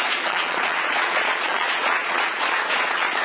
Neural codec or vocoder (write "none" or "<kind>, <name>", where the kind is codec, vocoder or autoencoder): vocoder, Vocos